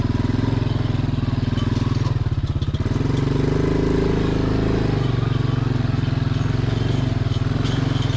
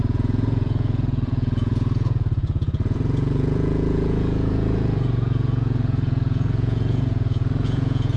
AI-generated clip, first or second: second